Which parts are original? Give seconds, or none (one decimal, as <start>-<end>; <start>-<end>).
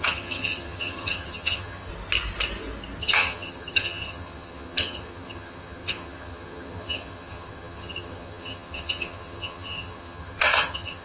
1.9-3.0